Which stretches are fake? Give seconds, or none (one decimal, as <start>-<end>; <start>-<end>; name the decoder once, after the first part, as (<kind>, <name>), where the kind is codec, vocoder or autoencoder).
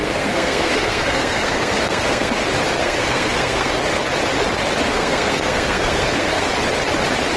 0.0-2.3 (codec, SNAC); 2.8-3.7; 4.9-6.5